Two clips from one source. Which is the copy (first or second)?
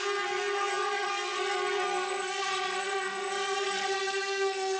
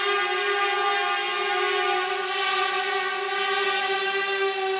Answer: first